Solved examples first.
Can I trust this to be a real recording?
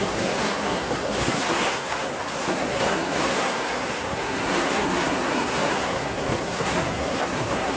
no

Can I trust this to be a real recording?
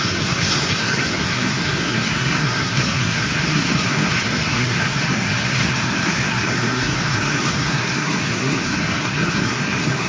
no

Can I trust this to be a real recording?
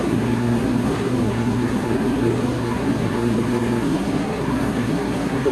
no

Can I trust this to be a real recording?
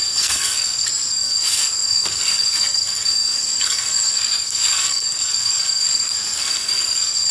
no